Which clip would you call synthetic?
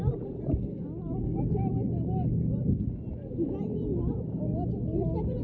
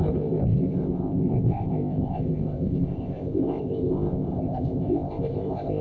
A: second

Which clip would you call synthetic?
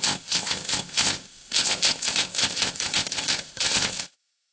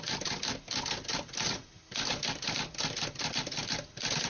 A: first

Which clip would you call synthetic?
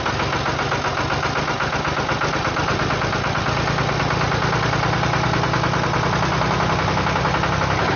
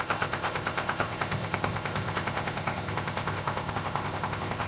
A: second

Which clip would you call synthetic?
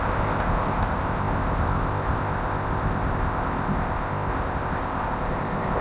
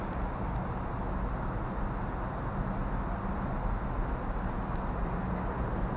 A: first